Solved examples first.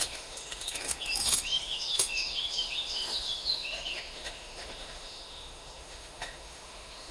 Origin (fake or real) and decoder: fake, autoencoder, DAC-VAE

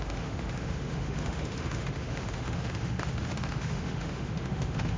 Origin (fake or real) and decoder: fake, autoencoder, DAC-VAE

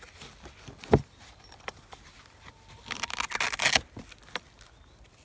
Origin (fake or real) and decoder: real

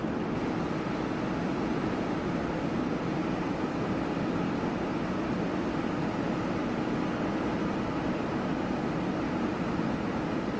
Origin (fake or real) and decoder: real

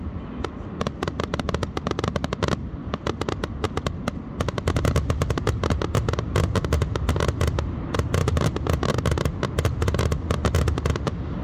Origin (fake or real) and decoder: real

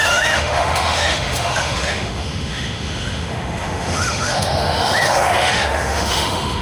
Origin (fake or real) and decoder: fake, autoencoder, DAC-VAE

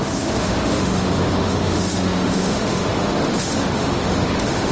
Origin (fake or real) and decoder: fake, autoencoder, DAC-VAE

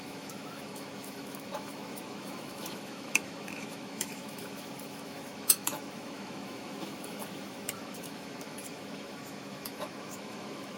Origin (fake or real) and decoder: fake, autoencoder, DAC-VAE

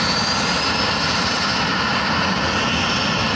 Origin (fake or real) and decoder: real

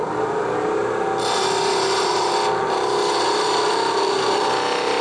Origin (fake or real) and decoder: real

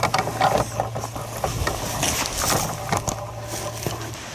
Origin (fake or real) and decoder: real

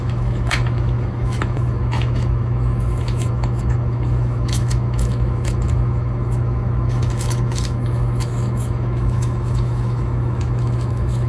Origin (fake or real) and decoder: fake, autoencoder, DAC-VAE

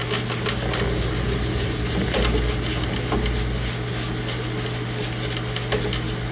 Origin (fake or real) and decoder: real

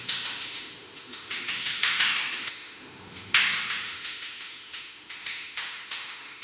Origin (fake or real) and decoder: fake, autoencoder, DAC-VAE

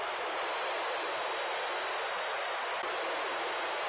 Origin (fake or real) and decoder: real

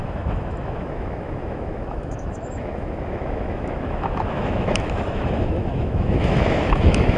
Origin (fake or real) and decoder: fake, autoencoder, DAC-VAE